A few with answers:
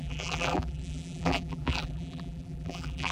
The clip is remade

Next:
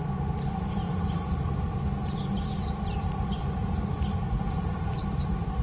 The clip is recorded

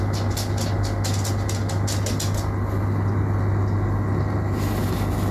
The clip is recorded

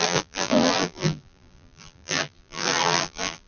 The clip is remade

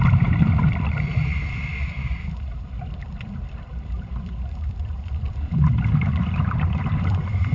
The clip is remade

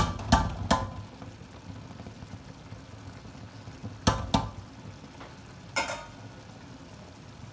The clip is recorded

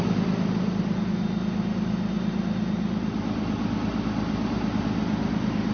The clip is recorded